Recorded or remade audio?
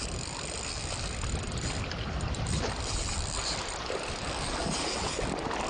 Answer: remade